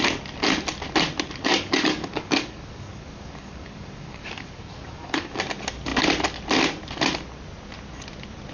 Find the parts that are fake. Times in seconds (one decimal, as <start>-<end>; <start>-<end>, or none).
1.5-5.4